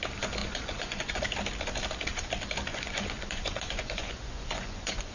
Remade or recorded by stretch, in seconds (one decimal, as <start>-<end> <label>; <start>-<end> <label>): 0.0-0.4 recorded; 0.4-1.2 remade; 1.2-2.7 recorded; 2.7-5.1 remade